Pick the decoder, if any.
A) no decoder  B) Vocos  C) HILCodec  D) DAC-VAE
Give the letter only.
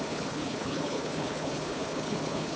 C